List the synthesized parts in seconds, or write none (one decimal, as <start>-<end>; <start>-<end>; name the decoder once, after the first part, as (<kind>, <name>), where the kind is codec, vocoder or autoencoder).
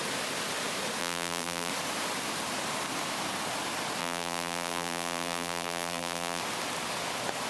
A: 1.0-1.7 (vocoder, BigVGAN v2); 4.0-6.4